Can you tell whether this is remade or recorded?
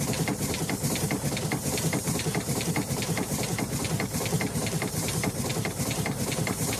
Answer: remade